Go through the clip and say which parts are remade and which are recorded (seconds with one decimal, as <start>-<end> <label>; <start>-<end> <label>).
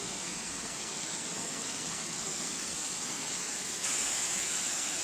0.0-5.0 remade